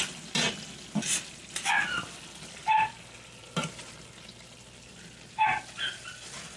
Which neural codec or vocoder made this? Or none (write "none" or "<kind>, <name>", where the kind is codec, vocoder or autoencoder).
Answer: none